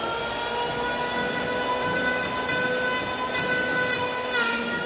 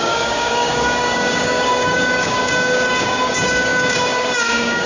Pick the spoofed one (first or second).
second